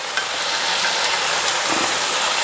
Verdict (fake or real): real